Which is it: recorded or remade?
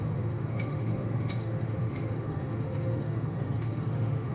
remade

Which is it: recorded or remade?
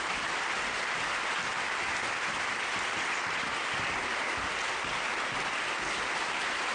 recorded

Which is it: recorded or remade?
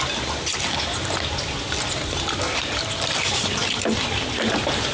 recorded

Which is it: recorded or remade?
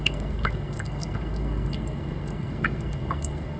remade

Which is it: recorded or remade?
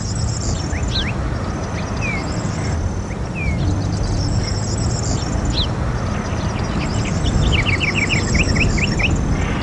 recorded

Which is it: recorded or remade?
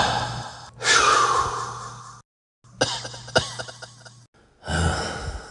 recorded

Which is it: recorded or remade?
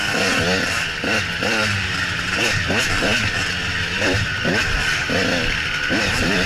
recorded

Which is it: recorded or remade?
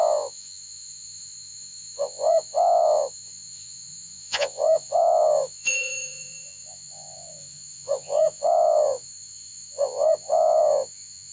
remade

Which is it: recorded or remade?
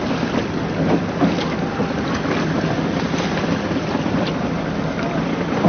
recorded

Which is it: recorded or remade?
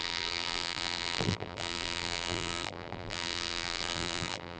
remade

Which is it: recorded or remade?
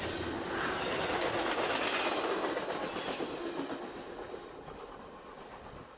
recorded